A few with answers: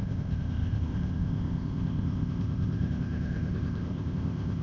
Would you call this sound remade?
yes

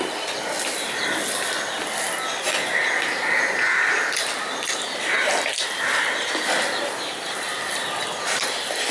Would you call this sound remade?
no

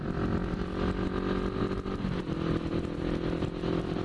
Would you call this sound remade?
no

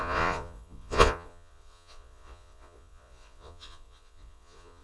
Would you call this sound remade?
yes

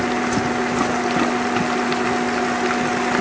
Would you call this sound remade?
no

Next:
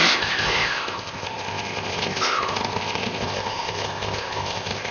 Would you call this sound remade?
yes